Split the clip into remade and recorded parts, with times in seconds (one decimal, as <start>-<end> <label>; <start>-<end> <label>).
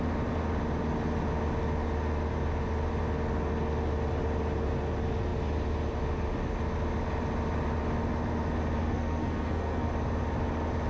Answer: 0.0-8.8 recorded; 8.8-9.9 remade; 9.9-10.9 recorded